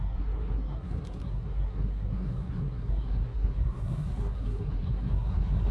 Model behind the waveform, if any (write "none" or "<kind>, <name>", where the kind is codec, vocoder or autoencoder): codec, SNAC